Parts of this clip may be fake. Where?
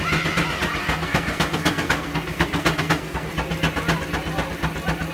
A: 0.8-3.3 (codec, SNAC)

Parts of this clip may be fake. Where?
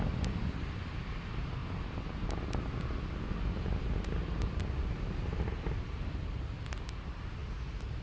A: none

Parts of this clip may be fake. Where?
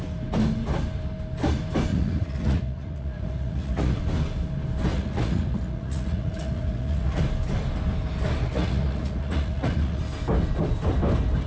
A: 1.9-4.0 (vocoder, Vocos); 4.9-7.2; 8.4-10.0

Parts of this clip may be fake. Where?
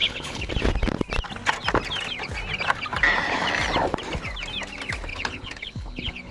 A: 0.0-0.5 (codec, HILCodec); 5.1-6.3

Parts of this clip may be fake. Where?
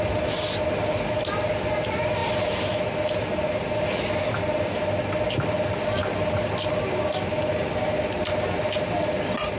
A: none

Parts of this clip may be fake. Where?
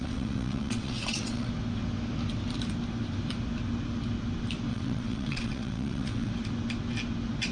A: 0.0-1.5 (vocoder, WaveNeXt); 4.7-6.3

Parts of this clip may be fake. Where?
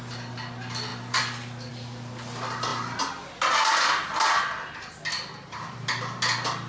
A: none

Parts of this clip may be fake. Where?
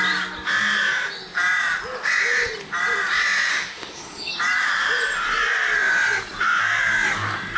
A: 3.5-4.3 (autoencoder, DAC-VAE)